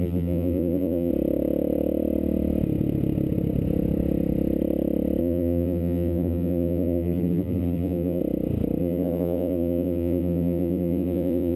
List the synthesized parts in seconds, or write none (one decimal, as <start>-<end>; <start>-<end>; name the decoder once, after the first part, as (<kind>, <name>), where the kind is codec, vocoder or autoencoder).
0.0-1.1 (vocoder, BigVGAN v2); 5.2-8.2; 8.8-11.6